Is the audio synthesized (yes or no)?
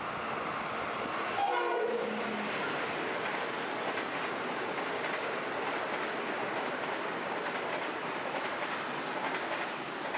no